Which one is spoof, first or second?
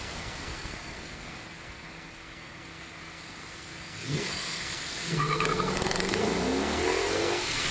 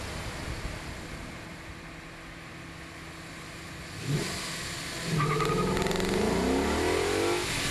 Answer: first